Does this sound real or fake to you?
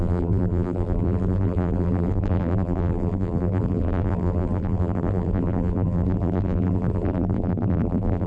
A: fake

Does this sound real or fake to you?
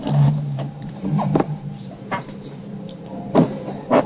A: fake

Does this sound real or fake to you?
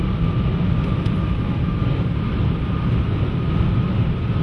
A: real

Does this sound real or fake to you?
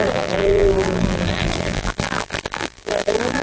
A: fake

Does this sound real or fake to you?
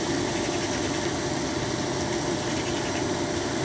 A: real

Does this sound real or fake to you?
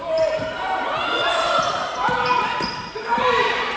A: fake